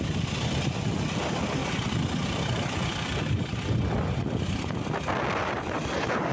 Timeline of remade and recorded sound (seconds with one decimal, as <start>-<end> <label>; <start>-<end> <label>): 0.0-6.3 recorded